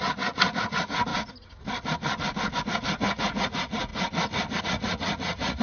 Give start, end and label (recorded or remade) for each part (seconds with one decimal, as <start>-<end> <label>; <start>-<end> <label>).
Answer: 0.0-1.1 remade; 1.1-2.6 recorded; 2.6-3.9 remade; 3.9-4.6 recorded; 4.6-5.6 remade